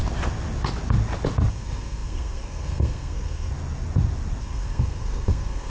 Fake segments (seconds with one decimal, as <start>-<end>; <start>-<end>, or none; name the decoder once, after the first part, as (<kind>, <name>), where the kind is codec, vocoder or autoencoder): 1.5-3.5 (codec, SNAC); 4.4-5.7